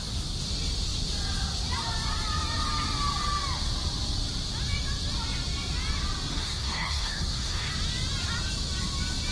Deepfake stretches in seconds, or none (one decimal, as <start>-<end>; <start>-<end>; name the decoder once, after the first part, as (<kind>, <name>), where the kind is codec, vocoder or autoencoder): 6.3-7.7 (codec, SNAC)